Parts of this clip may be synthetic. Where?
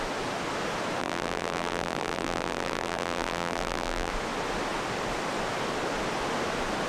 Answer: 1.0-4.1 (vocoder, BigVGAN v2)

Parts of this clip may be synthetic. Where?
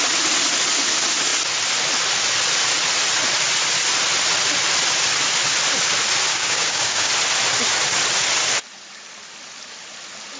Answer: 6.3-7.1 (codec, DAC)